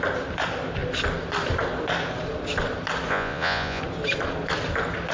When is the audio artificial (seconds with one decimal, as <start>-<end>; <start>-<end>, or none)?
3.1-3.8